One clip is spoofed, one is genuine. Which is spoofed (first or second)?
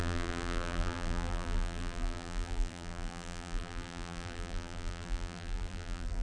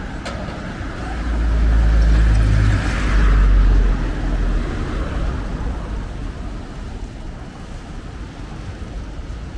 first